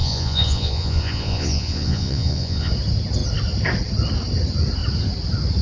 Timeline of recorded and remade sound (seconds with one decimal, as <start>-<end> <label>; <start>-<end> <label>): 0.0-2.7 remade; 2.7-5.6 recorded